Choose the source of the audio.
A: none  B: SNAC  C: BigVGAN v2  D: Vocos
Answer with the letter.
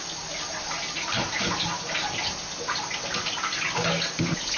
A